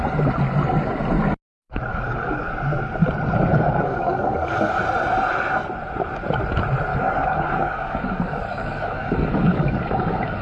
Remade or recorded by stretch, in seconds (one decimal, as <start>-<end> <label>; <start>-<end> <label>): 0.0-1.9 recorded; 1.9-2.5 remade; 2.5-3.5 recorded; 3.5-4.8 remade; 4.8-6.9 recorded; 6.9-10.4 remade